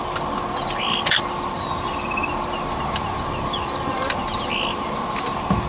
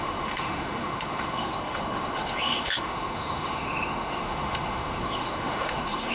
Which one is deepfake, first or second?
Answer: second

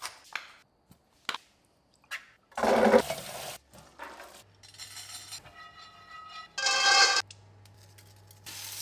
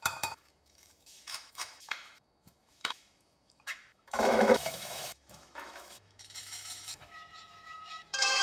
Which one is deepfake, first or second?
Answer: second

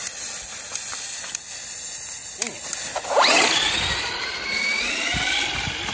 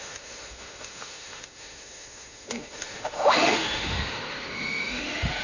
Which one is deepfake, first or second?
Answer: second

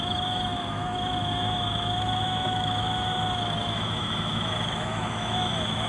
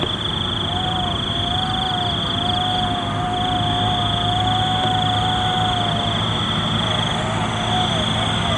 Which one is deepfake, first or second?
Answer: first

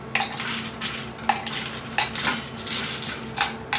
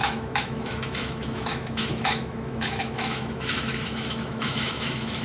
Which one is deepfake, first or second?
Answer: second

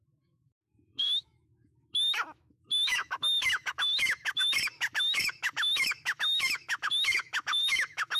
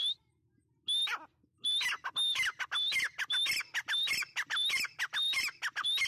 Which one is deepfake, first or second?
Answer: first